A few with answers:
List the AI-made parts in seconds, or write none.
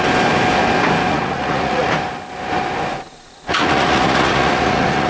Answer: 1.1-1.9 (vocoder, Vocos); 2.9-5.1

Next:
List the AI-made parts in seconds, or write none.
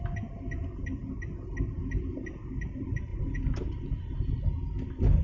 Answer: 3.1-4.4 (vocoder, BigVGAN v2)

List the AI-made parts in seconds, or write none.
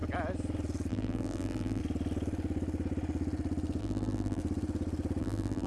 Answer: 0.9-1.8 (vocoder, BigVGAN v2); 3.8-4.4; 5.2-5.7